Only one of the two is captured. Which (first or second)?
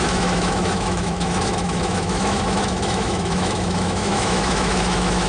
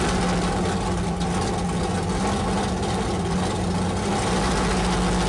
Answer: second